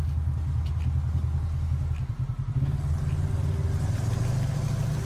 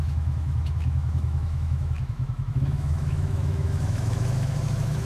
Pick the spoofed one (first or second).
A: second